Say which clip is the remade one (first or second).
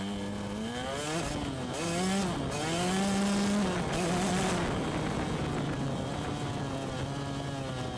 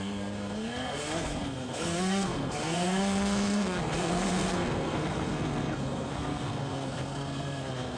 second